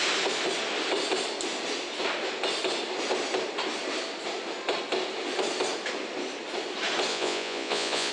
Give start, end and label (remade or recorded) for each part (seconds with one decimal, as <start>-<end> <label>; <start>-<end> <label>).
0.0-7.1 recorded; 7.1-8.1 remade

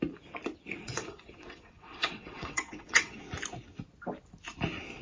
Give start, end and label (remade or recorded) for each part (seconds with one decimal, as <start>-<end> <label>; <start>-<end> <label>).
0.0-0.8 recorded; 0.8-3.2 remade; 3.2-5.0 recorded

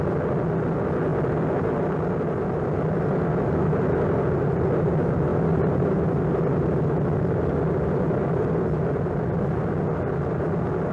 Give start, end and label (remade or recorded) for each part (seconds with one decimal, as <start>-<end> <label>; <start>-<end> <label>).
0.0-10.9 recorded

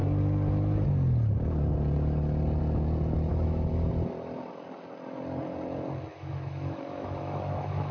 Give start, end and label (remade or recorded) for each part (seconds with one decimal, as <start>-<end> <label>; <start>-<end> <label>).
0.0-3.3 recorded; 3.3-3.9 remade; 3.9-6.1 recorded; 6.1-7.9 remade

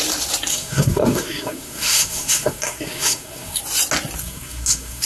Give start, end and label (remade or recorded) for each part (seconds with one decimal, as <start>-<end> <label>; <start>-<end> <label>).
0.0-0.5 recorded; 0.5-3.6 remade; 3.6-4.2 recorded; 4.2-5.1 remade